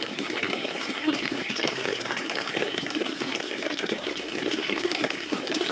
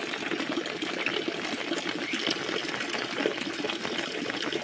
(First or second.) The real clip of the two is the second